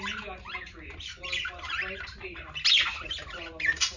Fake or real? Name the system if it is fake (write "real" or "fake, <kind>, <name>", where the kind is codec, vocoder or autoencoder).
real